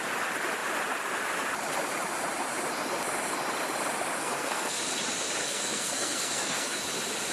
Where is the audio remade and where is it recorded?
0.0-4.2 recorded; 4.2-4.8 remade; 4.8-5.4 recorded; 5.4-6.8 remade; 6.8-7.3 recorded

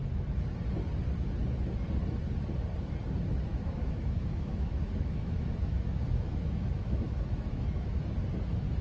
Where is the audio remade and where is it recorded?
0.0-3.5 recorded; 3.5-8.1 remade; 8.1-8.8 recorded

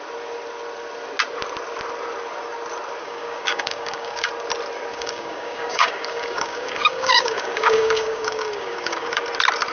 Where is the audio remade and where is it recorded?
0.0-3.0 recorded; 3.0-4.3 remade; 4.3-4.9 recorded; 4.9-9.2 remade; 9.2-9.7 recorded

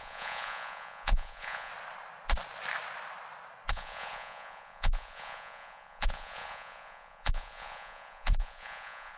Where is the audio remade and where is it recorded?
0.0-1.7 remade; 1.7-3.7 recorded; 3.7-9.2 remade